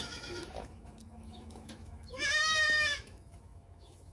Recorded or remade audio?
remade